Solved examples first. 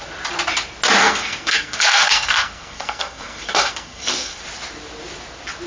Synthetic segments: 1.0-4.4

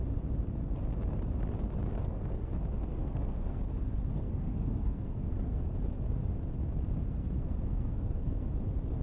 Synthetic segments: 2.0-2.5; 3.0-3.6; 4.1-5.7; 7.0-8.5

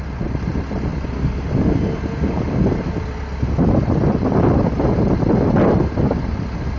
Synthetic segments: none

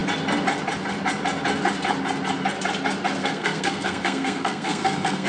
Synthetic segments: 3.2-5.3

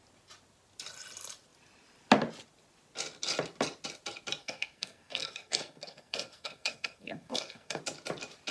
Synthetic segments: 4.4-7.8

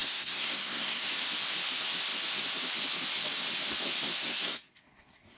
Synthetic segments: 0.0-1.1; 4.2-5.4

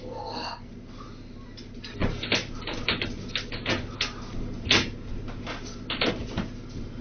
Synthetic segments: 0.0-0.7

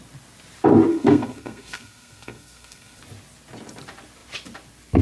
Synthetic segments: 0.9-3.0